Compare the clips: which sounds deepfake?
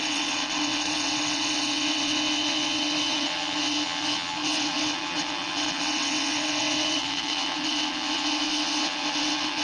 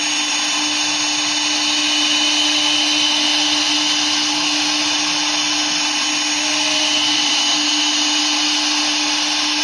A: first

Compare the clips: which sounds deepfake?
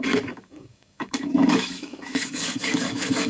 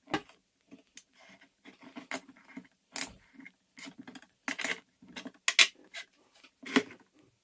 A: first